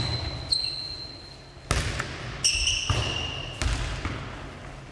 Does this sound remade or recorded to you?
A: recorded